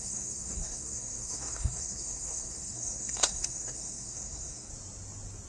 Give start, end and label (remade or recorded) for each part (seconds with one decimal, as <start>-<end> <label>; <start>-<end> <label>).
0.0-4.7 remade; 4.7-5.5 recorded